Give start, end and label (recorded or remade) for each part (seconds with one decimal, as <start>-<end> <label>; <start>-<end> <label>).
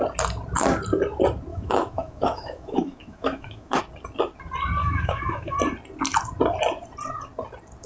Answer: 0.0-1.5 recorded; 1.5-3.8 remade; 3.8-4.8 recorded; 4.8-5.6 remade; 5.6-7.9 recorded